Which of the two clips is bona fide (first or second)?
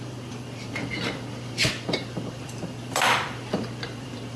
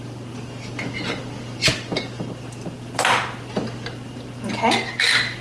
second